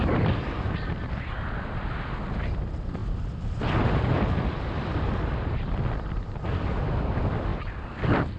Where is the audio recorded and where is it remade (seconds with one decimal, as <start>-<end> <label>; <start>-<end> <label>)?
0.0-3.0 recorded; 3.0-7.0 remade; 7.0-8.4 recorded